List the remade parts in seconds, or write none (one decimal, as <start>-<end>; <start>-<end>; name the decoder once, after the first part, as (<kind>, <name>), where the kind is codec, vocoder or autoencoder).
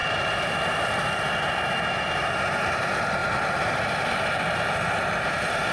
0.0-5.7 (vocoder, BigVGAN v2)